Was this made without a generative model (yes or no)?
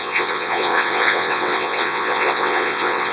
no